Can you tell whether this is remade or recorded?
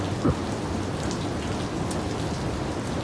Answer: recorded